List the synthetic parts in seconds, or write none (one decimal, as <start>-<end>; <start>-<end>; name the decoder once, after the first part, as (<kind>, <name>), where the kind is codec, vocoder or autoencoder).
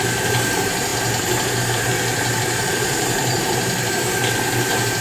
0.0-5.0 (vocoder, BigVGAN v2)